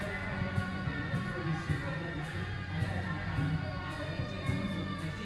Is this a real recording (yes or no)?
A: no